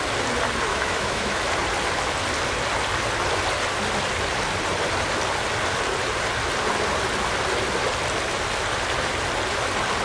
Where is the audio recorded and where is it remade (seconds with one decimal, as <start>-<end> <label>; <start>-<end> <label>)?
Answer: 0.0-0.7 recorded; 0.7-1.4 remade; 1.4-10.0 recorded